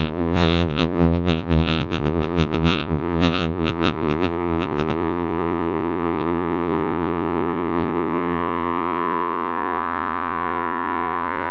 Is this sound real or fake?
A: fake